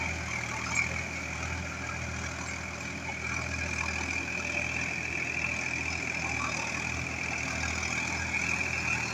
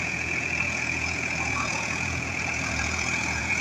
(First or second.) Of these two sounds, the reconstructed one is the second